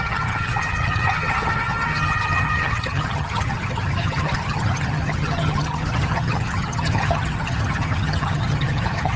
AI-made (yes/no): yes